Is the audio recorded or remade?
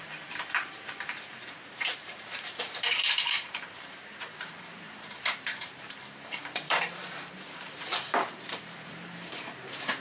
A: remade